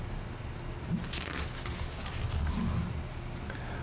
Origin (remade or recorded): recorded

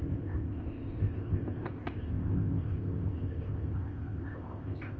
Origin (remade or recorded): remade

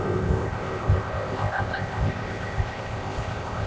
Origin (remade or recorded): remade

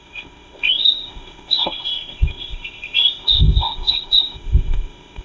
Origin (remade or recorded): remade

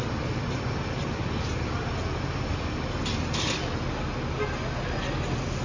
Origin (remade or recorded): recorded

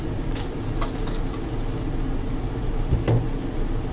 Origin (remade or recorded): recorded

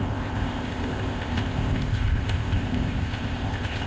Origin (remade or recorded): remade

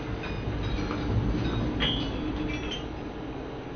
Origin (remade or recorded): recorded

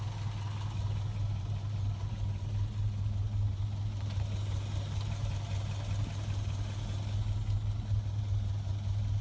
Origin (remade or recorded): recorded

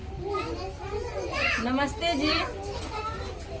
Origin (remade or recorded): recorded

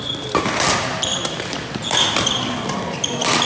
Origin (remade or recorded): recorded